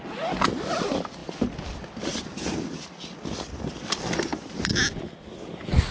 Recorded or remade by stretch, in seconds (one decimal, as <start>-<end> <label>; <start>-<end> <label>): 0.0-5.9 recorded